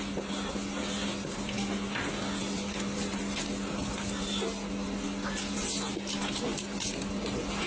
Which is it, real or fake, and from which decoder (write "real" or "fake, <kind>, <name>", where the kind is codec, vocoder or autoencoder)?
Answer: real